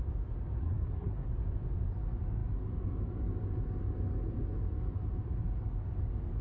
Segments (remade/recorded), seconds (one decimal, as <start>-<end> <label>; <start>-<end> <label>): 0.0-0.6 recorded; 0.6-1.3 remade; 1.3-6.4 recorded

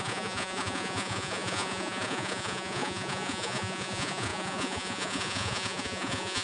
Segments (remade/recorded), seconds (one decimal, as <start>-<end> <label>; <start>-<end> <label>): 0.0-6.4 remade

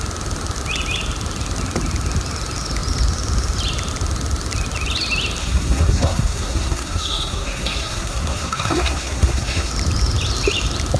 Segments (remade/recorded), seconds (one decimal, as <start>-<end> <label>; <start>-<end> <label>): 0.0-5.4 recorded; 5.4-9.7 remade; 9.7-11.0 recorded

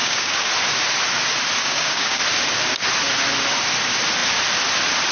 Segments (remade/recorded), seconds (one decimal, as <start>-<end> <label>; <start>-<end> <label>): 0.0-0.5 remade; 0.5-1.6 recorded; 1.6-2.2 remade; 2.2-5.1 recorded

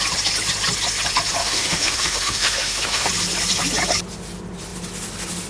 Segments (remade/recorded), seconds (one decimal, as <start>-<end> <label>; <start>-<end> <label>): 0.0-1.4 recorded; 1.4-3.1 remade; 3.1-5.5 recorded

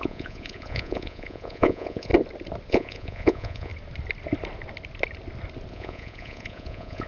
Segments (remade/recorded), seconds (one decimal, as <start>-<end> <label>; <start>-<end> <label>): 0.0-2.1 remade; 2.1-2.7 recorded; 2.7-3.7 remade; 3.7-5.7 recorded; 5.7-7.1 remade

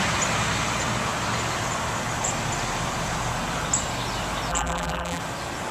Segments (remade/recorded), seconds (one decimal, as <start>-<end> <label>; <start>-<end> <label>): 0.0-4.5 recorded; 4.5-5.2 remade; 5.2-5.7 recorded

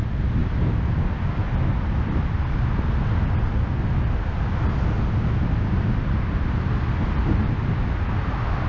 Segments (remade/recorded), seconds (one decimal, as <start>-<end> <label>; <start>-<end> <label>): 0.0-8.7 recorded